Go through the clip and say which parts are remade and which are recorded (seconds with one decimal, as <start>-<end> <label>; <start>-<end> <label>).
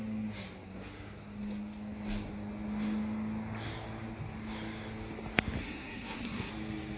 0.0-5.6 recorded; 5.6-6.5 remade; 6.5-7.0 recorded